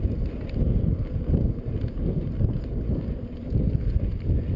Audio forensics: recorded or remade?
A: recorded